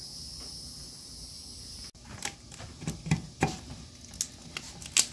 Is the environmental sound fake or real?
real